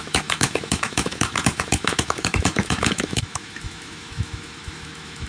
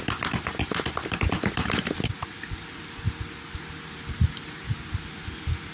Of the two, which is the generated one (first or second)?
first